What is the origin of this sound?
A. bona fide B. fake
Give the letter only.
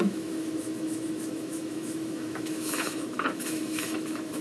B